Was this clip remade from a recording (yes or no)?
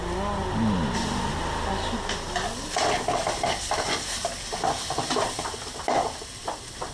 no